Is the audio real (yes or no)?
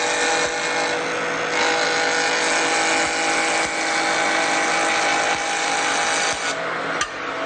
yes